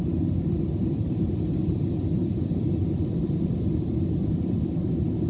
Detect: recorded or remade recorded